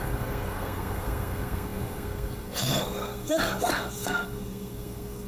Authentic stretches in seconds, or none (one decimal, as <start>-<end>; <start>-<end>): none